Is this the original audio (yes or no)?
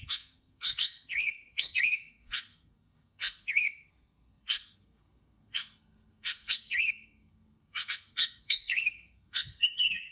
no